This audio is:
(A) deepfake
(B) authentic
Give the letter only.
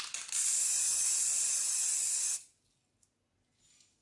B